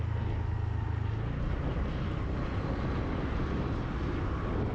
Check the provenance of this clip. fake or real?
real